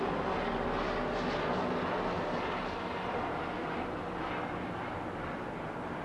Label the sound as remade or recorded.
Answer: recorded